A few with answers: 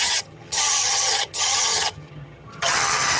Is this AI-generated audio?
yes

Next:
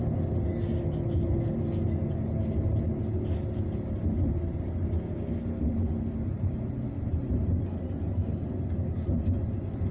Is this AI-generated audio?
no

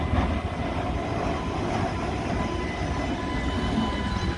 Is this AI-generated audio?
no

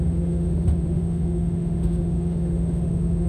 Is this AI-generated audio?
yes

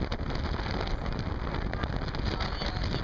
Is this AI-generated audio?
no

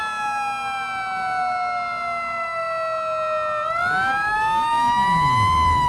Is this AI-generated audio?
no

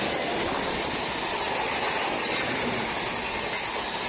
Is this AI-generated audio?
no